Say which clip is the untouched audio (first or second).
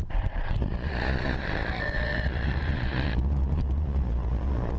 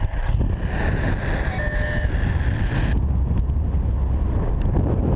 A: second